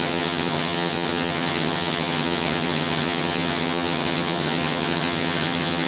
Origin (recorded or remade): remade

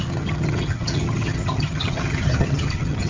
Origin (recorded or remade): remade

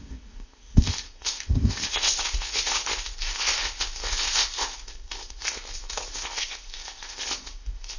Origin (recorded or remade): remade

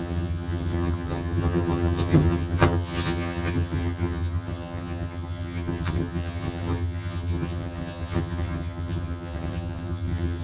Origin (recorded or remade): remade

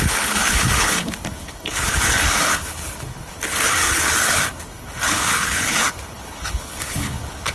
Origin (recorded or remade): remade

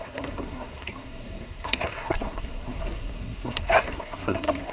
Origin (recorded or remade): remade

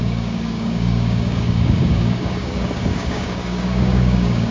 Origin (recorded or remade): remade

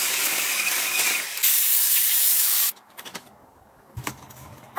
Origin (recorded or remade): remade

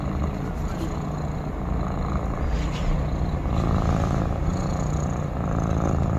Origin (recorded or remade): recorded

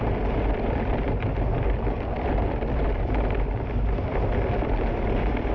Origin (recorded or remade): recorded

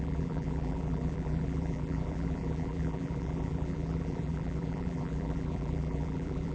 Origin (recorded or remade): remade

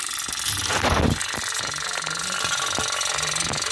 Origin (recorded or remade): recorded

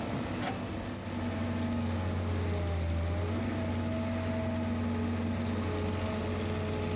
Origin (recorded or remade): recorded